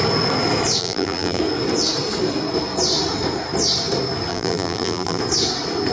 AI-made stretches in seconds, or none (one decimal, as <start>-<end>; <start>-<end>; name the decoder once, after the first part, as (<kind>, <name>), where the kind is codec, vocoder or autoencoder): 0.8-1.4 (vocoder, BigVGAN v2); 4.3-5.2